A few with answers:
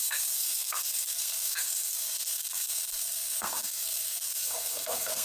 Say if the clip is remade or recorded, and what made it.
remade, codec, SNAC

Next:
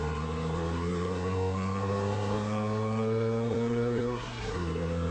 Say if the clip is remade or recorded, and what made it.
remade, codec, SNAC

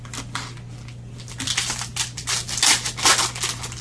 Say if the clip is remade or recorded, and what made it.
recorded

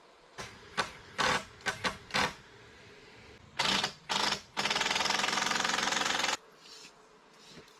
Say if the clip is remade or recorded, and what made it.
recorded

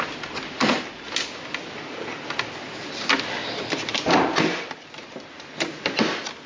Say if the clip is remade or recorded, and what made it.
recorded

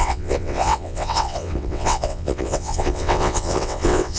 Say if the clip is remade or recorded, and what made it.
remade, vocoder, WaveNeXt